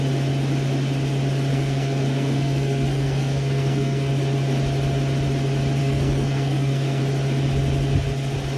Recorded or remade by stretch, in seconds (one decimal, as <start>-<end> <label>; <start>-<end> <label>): 0.0-1.5 recorded; 1.5-4.1 remade; 4.1-5.8 recorded; 5.8-7.0 remade; 7.0-8.6 recorded